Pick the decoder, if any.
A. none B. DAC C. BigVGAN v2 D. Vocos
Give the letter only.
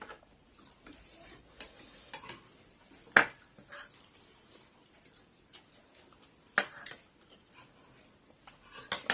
A